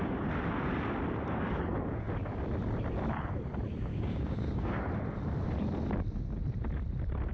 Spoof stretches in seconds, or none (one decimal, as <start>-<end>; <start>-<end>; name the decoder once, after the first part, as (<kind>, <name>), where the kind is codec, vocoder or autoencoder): 3.9-4.8 (codec, DAC)